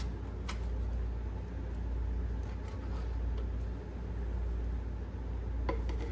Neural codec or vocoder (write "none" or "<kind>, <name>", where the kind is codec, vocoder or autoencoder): none